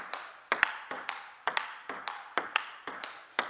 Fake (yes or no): no